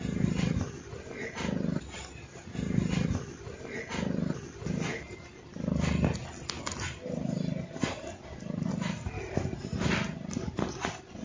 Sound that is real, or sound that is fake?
real